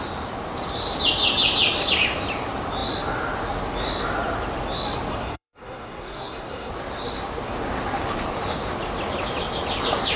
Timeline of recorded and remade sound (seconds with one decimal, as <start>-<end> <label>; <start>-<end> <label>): 0.0-5.1 recorded; 5.1-6.7 remade; 6.7-10.2 recorded